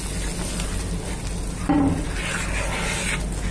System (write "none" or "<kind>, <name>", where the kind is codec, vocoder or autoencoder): none